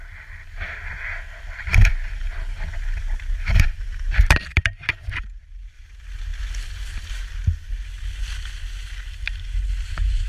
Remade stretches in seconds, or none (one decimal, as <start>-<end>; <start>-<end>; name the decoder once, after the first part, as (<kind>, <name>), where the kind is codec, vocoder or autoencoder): none